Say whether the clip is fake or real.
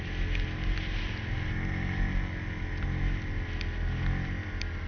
real